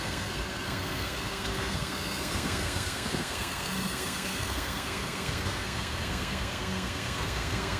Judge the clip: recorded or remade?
remade